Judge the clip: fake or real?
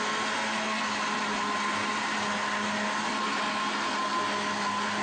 real